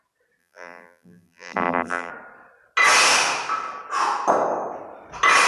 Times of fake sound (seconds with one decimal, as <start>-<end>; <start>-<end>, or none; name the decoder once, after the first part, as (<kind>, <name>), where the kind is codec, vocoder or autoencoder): 0.4-2.1 (vocoder, BigVGAN v2)

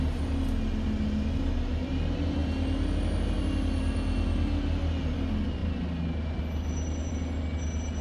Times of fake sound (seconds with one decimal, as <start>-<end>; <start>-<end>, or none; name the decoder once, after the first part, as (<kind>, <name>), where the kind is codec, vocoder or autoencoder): none

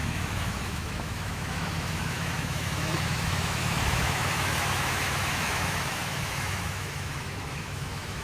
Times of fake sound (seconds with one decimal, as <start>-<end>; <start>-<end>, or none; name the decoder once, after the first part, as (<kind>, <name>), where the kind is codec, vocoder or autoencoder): 0.0-8.2 (autoencoder, DAC-VAE)

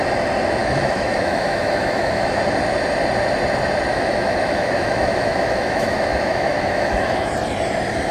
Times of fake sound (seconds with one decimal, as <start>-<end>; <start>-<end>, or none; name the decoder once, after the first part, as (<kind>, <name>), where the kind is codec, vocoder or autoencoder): 0.6-2.4 (autoencoder, DAC-VAE); 3.9-7.3

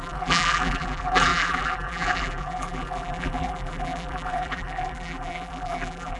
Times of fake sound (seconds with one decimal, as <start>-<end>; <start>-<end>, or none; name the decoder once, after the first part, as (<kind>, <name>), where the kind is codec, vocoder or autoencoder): 0.0-6.2 (vocoder, BigVGAN v2)